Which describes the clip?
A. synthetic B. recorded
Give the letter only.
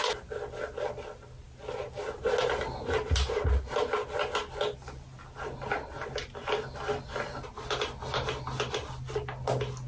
B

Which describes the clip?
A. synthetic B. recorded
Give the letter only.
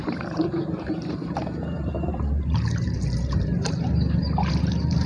A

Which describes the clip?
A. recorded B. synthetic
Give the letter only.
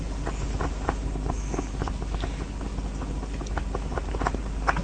A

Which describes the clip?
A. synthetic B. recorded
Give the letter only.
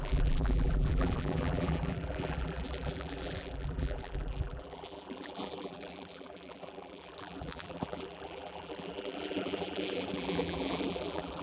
A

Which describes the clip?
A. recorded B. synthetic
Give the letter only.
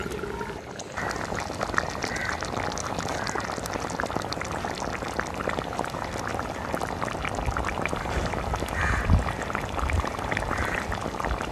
A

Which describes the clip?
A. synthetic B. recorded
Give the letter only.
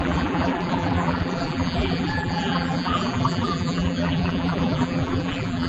A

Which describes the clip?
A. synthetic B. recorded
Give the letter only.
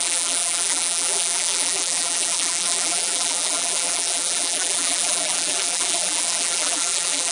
A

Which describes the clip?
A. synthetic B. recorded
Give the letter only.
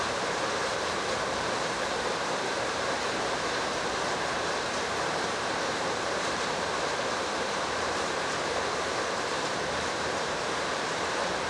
A